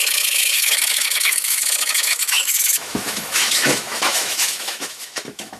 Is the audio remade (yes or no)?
yes